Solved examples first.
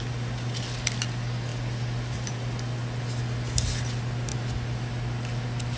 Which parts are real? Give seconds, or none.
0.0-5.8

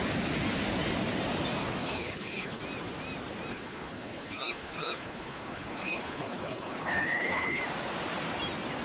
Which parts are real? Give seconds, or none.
0.0-1.8; 2.6-3.5; 7.6-8.8

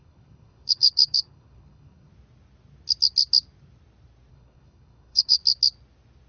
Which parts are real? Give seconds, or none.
2.1-4.3; 5.4-6.3

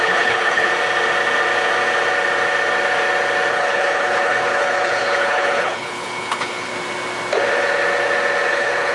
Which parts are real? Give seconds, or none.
0.7-3.5; 6.7-8.5

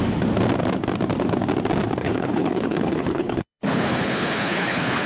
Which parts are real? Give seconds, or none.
0.0-2.0

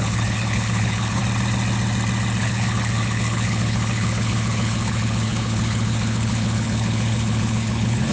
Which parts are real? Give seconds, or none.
1.2-2.4